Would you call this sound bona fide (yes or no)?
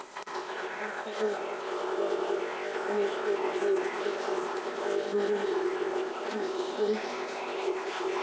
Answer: no